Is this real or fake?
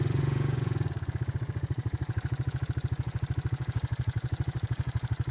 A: fake